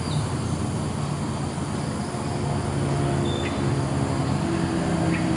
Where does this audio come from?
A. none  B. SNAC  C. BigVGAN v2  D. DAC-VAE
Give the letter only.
A